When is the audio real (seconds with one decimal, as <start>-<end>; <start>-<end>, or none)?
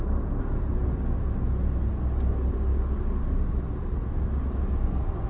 0.0-5.3